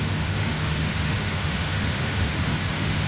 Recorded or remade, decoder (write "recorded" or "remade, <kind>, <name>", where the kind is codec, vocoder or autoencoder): remade, autoencoder, DAC-VAE